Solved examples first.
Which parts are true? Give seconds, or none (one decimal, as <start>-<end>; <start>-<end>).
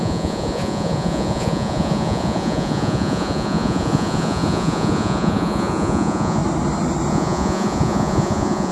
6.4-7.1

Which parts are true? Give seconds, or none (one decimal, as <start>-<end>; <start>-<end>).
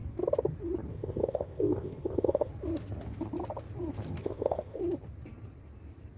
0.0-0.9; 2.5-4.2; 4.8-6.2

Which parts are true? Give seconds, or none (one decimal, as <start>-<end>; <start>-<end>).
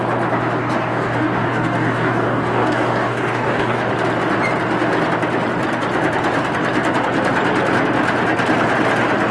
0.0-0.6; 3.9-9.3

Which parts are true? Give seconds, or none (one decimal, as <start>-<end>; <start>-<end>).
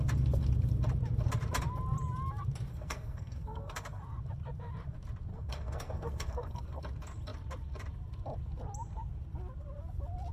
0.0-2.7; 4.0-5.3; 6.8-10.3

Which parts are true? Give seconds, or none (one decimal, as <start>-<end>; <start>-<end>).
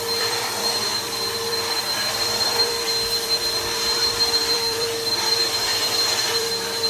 none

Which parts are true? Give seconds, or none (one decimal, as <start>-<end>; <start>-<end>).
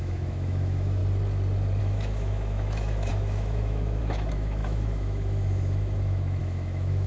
1.0-1.8